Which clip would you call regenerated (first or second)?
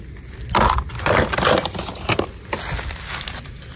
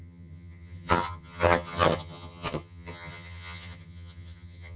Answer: second